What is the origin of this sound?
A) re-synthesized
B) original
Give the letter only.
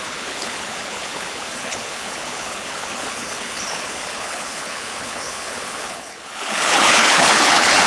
A